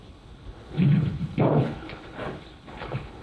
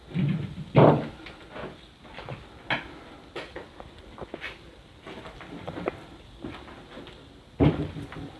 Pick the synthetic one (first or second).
first